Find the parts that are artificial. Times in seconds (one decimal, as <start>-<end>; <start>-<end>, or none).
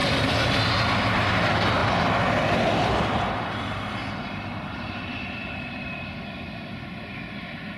0.0-0.6; 4.0-6.3